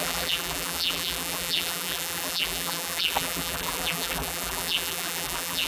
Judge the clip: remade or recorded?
remade